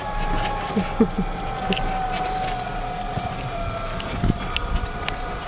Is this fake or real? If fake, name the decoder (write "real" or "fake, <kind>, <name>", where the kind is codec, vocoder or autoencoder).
real